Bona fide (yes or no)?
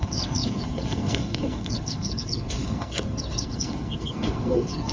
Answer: no